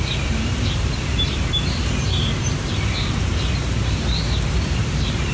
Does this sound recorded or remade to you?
remade